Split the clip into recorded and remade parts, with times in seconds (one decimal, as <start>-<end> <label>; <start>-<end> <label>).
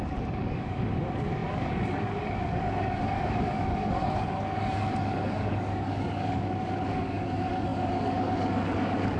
0.0-9.2 remade